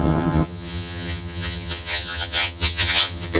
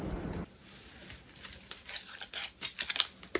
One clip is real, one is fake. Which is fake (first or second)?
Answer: first